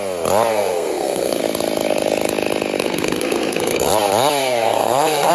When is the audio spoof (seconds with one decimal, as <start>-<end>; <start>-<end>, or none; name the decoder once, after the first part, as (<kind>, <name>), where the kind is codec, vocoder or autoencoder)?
0.5-1.4 (codec, SNAC); 2.8-3.9; 4.4-5.3